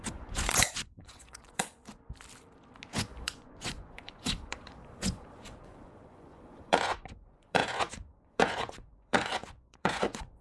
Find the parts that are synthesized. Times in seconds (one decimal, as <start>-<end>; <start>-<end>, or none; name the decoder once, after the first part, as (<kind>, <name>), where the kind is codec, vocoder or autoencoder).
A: 0.0-1.8 (vocoder, Vocos); 2.9-10.4

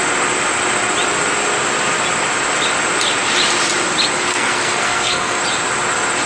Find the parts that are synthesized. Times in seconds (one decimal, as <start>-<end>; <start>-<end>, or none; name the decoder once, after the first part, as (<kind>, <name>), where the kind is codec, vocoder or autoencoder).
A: 4.3-5.4 (codec, SNAC)

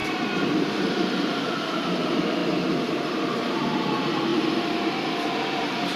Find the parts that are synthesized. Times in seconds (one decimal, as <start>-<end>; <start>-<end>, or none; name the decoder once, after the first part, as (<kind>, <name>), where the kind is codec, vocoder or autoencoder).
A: 0.0-2.4 (vocoder, BigVGAN v2); 2.9-4.3; 5.6-6.0

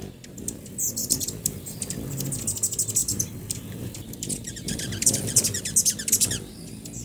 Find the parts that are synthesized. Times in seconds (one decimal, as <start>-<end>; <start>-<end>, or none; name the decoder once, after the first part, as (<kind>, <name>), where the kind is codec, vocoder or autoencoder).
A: 1.0-2.1 (vocoder, BigVGAN v2); 3.0-5.6